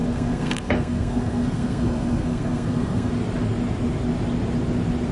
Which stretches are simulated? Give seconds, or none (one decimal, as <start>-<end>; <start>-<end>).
0.0-3.1